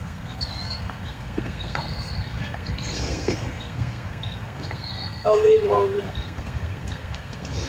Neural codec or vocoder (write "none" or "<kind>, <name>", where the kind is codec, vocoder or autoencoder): codec, SNAC